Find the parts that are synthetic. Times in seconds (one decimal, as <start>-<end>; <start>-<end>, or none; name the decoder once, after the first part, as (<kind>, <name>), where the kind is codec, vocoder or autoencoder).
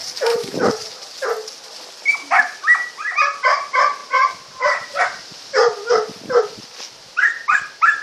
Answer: 0.0-0.7 (vocoder, BigVGAN v2)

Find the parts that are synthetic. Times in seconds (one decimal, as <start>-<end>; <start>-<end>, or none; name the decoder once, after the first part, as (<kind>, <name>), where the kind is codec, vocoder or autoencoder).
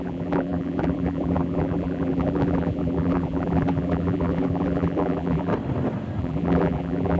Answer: 0.0-5.5 (vocoder, BigVGAN v2); 6.2-7.2